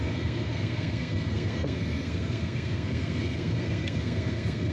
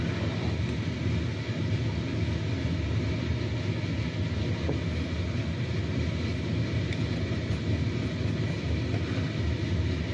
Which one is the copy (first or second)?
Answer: first